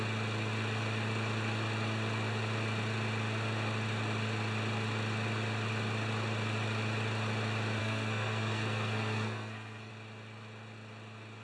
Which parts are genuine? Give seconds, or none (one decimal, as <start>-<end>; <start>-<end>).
0.0-7.8; 9.9-11.4